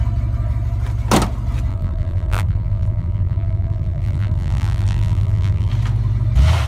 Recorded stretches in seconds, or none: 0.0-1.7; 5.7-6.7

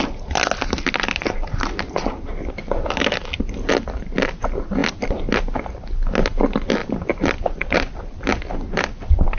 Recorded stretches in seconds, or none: 0.0-6.8; 8.0-9.4

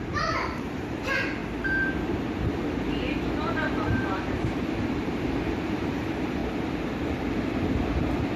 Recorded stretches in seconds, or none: 1.4-3.4; 6.4-8.4